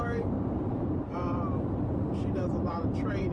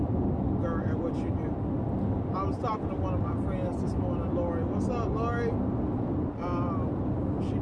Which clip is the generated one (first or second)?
first